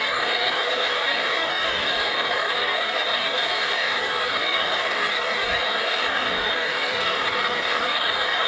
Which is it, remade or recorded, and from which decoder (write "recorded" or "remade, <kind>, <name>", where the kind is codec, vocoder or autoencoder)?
remade, codec, DAC